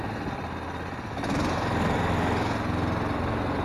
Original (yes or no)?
yes